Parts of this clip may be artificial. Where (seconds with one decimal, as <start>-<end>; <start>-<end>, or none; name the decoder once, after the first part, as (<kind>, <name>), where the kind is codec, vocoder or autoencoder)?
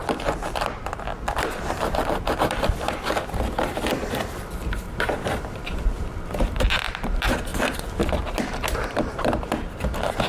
0.0-7.5 (vocoder, BigVGAN v2); 8.0-10.3